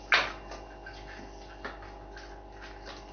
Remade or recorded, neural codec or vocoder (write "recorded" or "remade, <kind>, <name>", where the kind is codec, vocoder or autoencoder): recorded